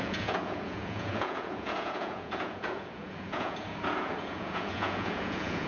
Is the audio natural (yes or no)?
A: no